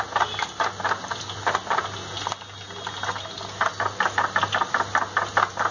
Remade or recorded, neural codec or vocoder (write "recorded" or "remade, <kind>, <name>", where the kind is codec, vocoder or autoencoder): recorded